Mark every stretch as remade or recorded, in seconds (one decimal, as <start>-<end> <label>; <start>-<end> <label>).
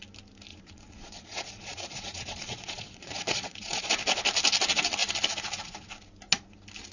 0.0-0.5 recorded; 0.5-3.9 remade; 3.9-6.9 recorded